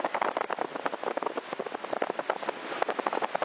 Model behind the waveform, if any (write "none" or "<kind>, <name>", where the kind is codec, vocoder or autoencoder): none